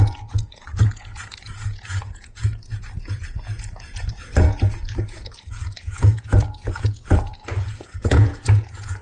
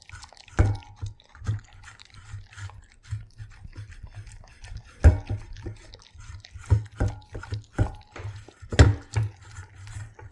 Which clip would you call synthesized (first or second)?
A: first